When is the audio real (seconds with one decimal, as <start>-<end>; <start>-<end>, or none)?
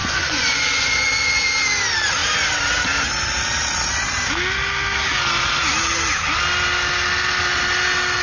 1.0-8.2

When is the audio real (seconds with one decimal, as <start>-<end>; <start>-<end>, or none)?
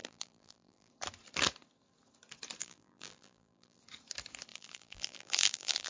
0.9-2.6; 3.8-4.5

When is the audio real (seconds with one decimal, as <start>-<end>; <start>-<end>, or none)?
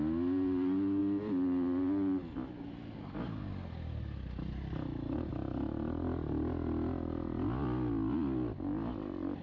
0.0-9.4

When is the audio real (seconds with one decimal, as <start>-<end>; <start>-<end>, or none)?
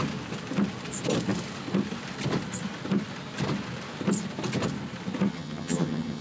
0.0-5.3